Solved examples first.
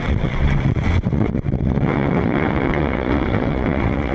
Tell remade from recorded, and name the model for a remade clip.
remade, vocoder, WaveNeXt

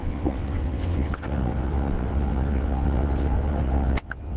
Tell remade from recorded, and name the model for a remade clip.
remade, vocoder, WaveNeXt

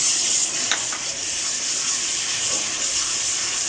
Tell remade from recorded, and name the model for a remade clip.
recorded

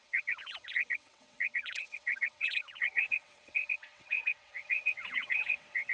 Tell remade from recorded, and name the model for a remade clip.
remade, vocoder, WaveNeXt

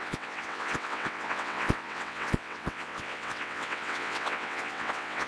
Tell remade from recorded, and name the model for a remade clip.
remade, vocoder, WaveNeXt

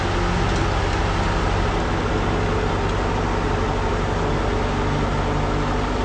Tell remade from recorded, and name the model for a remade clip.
recorded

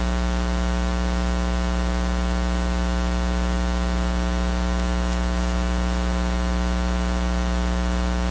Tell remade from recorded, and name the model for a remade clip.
recorded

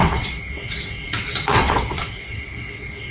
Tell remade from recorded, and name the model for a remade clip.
remade, vocoder, WaveNeXt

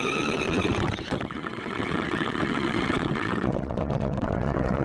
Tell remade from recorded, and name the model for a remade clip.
remade, vocoder, WaveNeXt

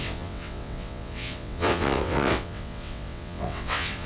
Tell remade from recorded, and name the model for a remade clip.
remade, vocoder, WaveNeXt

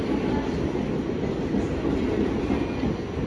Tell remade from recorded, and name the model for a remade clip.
recorded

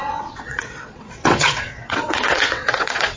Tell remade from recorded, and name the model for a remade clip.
remade, vocoder, WaveNeXt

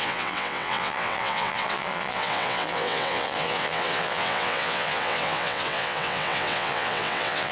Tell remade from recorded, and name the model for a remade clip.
remade, vocoder, WaveNeXt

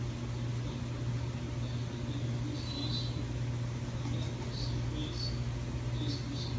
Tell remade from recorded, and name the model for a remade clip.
recorded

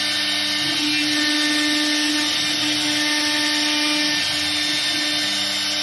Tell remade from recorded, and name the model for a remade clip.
recorded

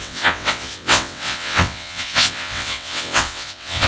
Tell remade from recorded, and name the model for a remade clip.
remade, vocoder, WaveNeXt